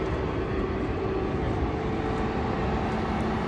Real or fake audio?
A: real